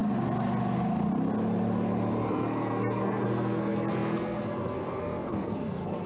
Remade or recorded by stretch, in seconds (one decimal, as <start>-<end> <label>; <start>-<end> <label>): 0.0-2.3 recorded; 2.3-6.1 remade